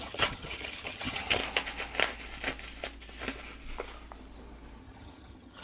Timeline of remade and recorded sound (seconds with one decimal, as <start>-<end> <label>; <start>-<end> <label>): 0.0-1.4 remade; 1.4-4.8 recorded; 4.8-5.6 remade